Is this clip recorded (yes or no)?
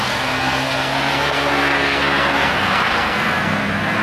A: no